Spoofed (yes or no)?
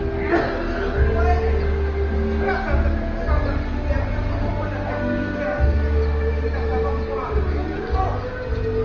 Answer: no